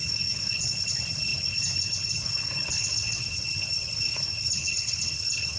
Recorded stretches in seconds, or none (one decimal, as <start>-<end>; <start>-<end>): none